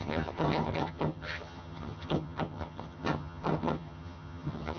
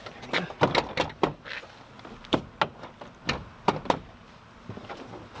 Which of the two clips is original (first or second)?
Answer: second